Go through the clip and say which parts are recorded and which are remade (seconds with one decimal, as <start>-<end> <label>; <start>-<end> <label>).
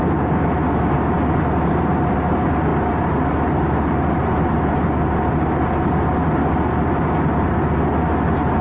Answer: 0.0-8.6 recorded